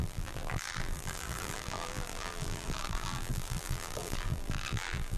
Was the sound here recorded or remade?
remade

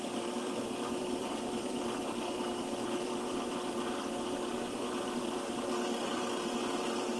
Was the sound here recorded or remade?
remade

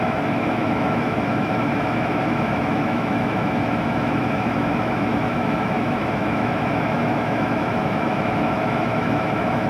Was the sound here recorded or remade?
remade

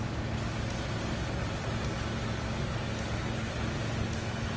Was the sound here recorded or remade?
recorded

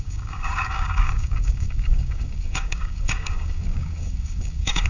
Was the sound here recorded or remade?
remade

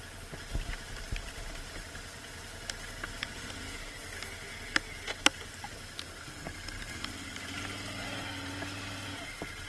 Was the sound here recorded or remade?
recorded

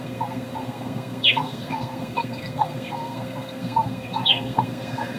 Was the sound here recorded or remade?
remade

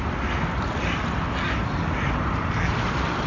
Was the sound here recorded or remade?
recorded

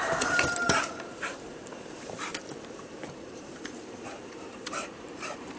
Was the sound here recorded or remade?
remade